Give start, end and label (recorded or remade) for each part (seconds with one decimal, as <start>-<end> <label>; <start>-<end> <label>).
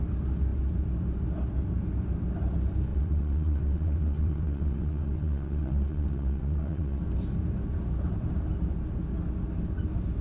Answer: 0.0-2.9 recorded; 2.9-7.0 remade; 7.0-10.2 recorded